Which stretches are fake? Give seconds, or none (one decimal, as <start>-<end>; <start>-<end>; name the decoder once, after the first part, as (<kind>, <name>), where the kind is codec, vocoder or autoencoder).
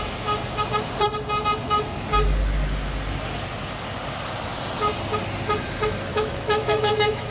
6.1-7.3 (autoencoder, DAC-VAE)